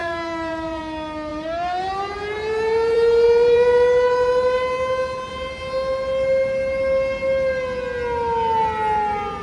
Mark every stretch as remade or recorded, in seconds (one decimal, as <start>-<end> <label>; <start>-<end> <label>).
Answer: 0.0-0.8 remade; 0.8-1.3 recorded; 1.3-5.7 remade; 5.7-9.4 recorded